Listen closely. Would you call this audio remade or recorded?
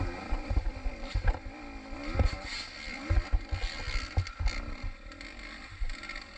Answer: recorded